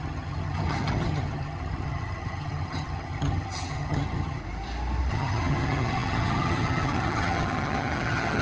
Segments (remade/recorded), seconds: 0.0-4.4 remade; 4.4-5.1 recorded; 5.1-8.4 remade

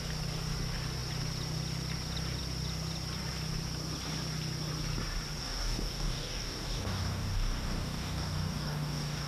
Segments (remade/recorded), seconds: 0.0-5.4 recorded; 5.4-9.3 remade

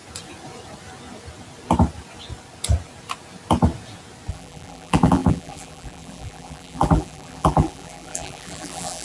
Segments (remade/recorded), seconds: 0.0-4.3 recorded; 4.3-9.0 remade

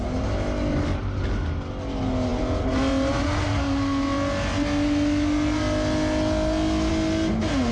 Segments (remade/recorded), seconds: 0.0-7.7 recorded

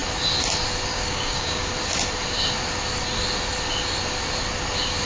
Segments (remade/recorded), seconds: 0.0-0.9 recorded; 0.9-1.7 remade; 1.7-5.1 recorded